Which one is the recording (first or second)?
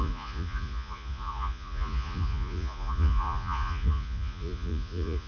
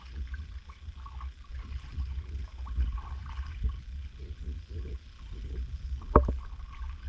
second